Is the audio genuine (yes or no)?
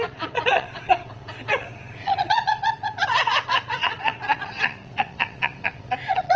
no